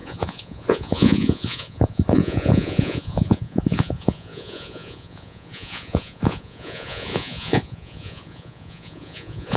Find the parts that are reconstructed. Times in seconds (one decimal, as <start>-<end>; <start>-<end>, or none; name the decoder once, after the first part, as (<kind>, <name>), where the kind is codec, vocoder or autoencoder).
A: 0.0-9.6 (vocoder, Vocos)